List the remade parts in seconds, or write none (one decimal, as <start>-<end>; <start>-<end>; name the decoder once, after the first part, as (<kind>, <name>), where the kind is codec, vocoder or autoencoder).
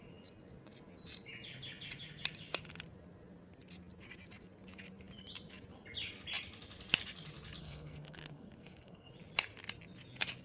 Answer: 7.6-9.1 (codec, SNAC)